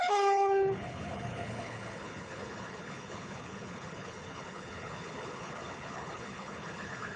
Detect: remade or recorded remade